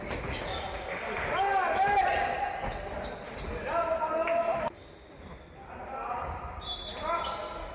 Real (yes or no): yes